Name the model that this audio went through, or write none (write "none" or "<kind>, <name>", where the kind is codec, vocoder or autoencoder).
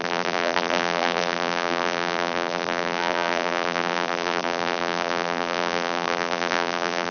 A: vocoder, BigVGAN v2